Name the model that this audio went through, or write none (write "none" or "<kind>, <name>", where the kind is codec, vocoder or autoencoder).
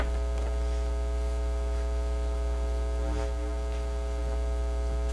none